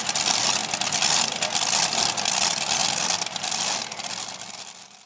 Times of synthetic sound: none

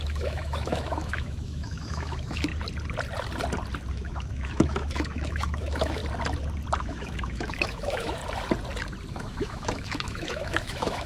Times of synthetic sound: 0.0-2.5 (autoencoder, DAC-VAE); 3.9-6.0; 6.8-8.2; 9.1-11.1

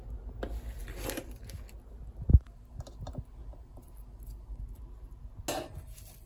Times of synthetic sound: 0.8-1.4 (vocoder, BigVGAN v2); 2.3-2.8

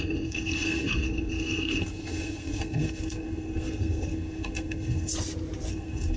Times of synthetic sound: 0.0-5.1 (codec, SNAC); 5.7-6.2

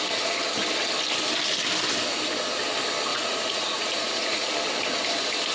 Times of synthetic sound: 3.1-4.5 (vocoder, Vocos)

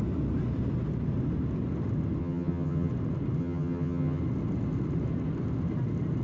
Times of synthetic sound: 2.2-2.9 (vocoder, HiFi-GAN); 3.4-4.2